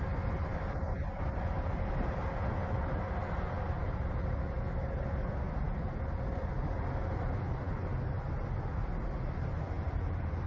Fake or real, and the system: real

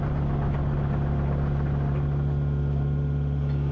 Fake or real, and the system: real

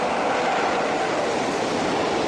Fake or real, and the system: real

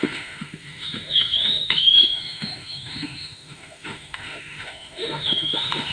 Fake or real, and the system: fake, autoencoder, DAC-VAE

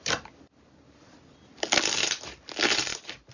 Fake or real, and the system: real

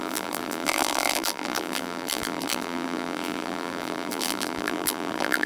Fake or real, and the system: fake, vocoder, BigVGAN v2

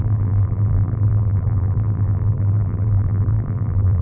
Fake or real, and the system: fake, vocoder, BigVGAN v2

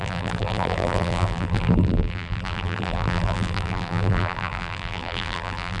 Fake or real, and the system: fake, vocoder, BigVGAN v2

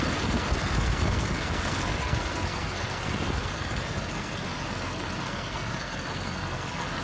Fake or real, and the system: fake, codec, SNAC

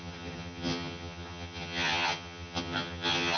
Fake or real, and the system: fake, vocoder, HiFi-GAN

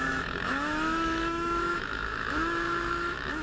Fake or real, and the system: fake, autoencoder, DAC-VAE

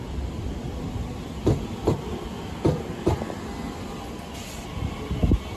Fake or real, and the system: real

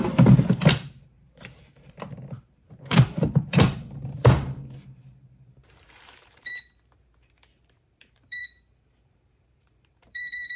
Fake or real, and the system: fake, vocoder, BigVGAN v2